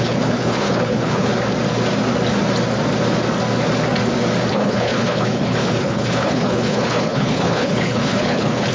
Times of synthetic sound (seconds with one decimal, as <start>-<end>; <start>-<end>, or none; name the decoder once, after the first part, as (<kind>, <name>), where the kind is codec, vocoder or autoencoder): 0.0-1.3 (codec, HILCodec); 4.5-8.7